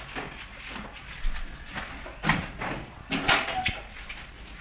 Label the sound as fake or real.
real